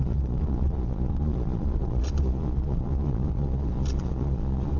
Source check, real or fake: fake